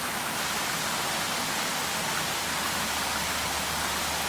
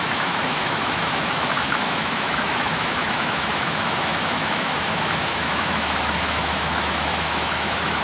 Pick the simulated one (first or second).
second